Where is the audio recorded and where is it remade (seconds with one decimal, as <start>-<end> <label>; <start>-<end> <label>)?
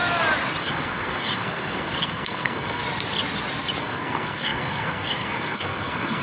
0.0-0.6 recorded; 0.6-2.8 remade; 2.8-3.8 recorded; 3.8-6.2 remade